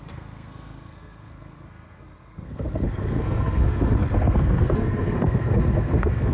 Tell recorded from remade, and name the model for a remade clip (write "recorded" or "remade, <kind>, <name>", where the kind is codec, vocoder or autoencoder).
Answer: remade, codec, SNAC